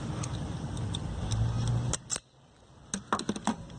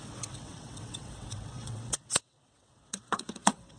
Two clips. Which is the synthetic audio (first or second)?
second